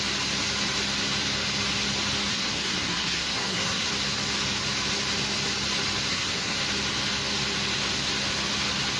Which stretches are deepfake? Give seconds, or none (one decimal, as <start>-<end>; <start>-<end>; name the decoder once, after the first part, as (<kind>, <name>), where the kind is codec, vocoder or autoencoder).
2.3-3.9 (codec, SNAC); 6.1-6.6

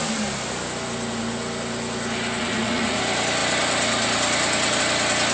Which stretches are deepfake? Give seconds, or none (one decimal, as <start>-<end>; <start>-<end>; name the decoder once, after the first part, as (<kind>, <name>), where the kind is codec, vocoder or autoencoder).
2.4-3.0 (vocoder, Vocos)

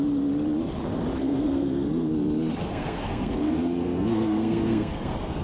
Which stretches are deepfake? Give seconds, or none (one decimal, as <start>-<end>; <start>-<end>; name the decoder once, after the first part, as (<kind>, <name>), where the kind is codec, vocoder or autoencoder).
1.2-2.1 (codec, SNAC); 2.6-5.4

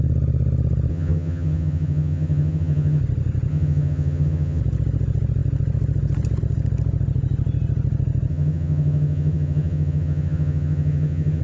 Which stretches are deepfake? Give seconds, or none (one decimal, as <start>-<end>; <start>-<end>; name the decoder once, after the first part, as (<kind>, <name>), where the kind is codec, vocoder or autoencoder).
0.9-3.0 (vocoder, HiFi-GAN); 3.5-4.6; 8.3-11.4

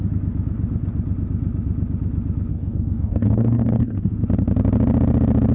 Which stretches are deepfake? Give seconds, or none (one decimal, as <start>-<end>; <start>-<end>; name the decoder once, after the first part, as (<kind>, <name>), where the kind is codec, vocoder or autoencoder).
2.5-4.1 (codec, DAC)